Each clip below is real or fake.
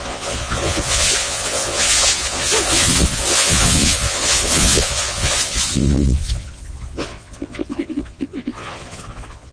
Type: fake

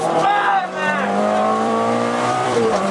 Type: fake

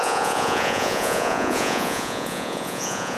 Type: fake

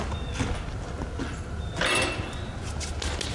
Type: real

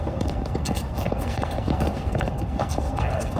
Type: fake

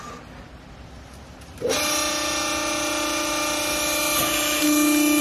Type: real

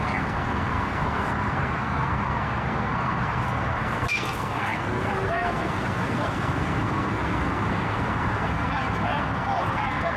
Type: fake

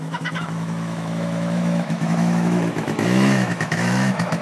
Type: fake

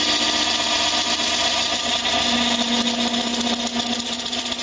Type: real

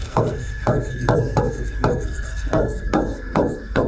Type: fake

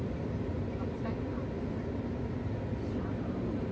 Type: real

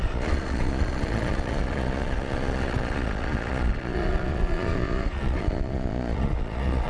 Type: fake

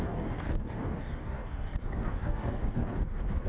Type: fake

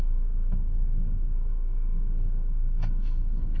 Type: fake